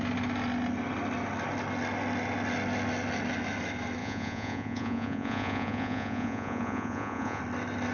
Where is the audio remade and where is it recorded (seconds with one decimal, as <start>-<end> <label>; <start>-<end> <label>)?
0.0-4.0 recorded; 4.0-7.4 remade; 7.4-7.9 recorded